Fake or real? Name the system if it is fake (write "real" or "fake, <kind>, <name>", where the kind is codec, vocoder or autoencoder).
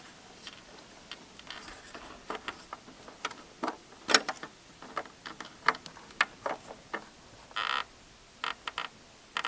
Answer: real